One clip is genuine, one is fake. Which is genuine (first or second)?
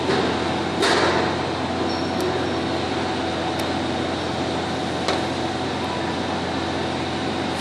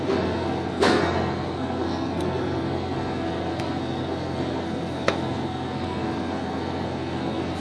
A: first